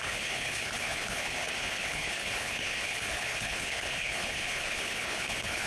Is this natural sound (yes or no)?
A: no